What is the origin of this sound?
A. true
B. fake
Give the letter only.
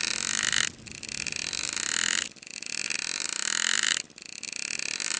A